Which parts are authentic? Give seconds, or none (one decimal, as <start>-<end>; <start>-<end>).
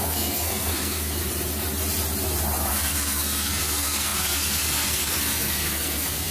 1.2-2.7